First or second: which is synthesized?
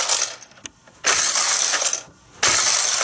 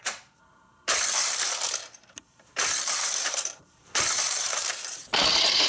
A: second